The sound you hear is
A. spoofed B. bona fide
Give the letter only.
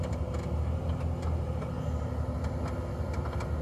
B